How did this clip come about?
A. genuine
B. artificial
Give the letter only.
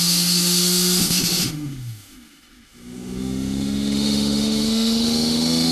B